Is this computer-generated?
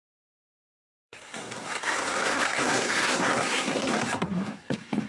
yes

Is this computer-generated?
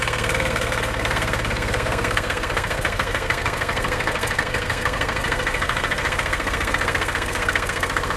yes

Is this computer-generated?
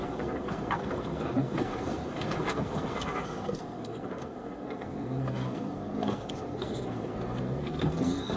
yes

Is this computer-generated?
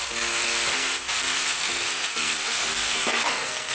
yes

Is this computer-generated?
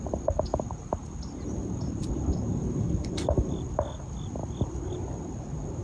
no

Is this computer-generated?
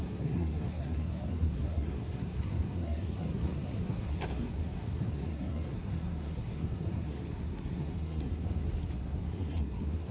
yes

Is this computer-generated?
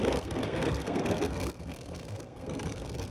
yes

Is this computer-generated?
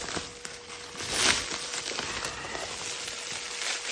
no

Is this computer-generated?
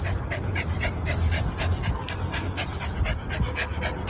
no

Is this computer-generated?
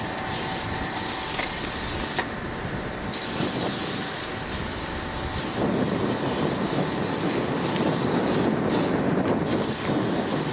no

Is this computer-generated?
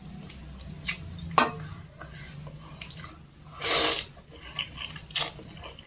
no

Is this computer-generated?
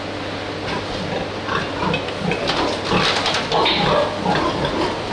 no